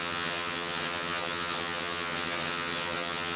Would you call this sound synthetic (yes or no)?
yes